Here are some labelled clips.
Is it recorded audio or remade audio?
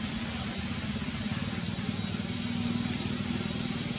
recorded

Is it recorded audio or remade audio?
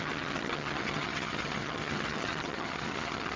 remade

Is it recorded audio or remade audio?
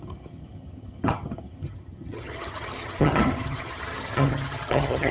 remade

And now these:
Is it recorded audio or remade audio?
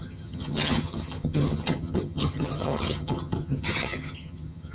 remade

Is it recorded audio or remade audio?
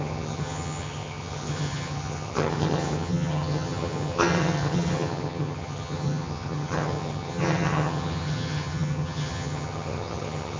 remade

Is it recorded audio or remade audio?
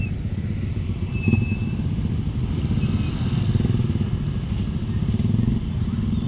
recorded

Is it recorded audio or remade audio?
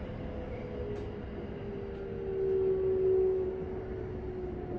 recorded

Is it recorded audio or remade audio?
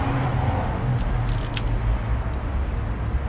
recorded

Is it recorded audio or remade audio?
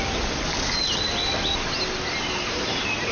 recorded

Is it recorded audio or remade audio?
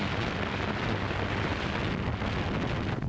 recorded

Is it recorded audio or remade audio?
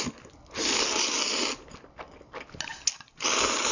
recorded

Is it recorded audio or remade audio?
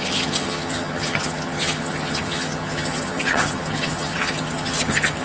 remade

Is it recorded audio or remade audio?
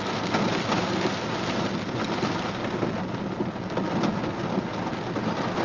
recorded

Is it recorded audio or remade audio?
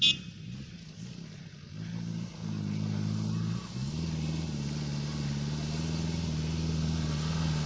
recorded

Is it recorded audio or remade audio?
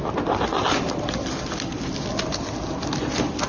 recorded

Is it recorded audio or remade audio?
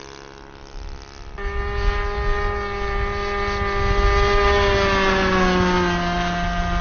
recorded